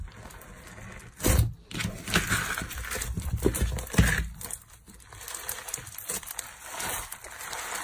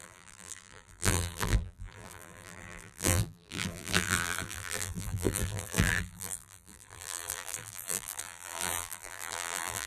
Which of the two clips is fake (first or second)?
second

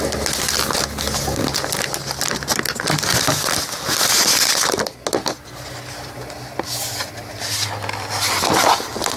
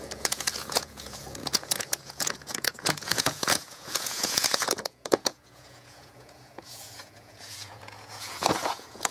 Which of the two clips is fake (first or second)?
second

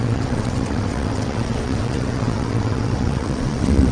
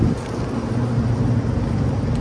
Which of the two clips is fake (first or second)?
first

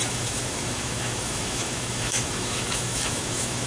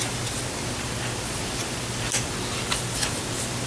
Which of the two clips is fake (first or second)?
first